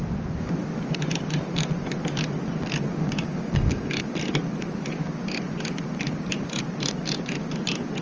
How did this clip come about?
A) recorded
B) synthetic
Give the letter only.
A